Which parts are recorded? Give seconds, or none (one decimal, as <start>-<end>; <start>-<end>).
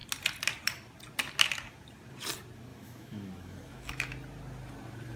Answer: 0.0-2.7; 4.1-5.2